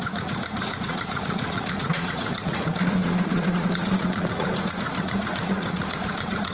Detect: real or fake fake